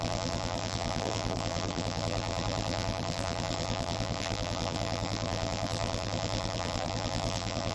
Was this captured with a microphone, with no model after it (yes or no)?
no